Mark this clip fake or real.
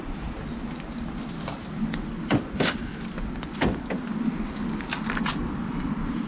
real